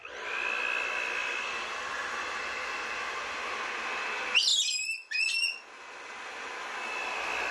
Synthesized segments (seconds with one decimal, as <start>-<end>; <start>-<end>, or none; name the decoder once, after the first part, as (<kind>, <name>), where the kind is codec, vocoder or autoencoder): 1.2-3.4 (vocoder, BigVGAN v2); 4.5-5.2